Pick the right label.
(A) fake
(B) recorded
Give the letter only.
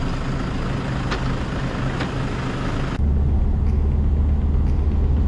B